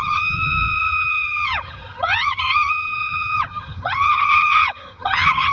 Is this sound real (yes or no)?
no